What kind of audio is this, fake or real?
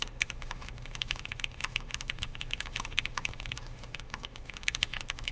fake